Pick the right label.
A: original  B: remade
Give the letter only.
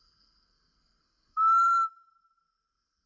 B